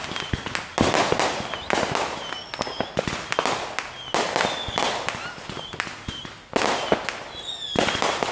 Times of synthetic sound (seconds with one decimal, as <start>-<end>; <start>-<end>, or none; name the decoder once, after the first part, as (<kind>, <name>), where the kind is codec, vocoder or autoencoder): none